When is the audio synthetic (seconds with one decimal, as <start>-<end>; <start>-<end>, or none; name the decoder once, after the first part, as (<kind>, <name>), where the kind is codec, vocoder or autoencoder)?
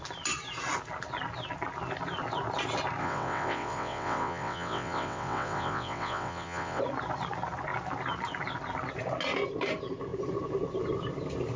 3.0-6.8 (vocoder, WaveNeXt)